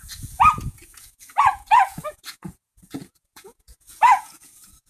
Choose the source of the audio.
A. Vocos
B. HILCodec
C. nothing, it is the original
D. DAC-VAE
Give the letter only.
A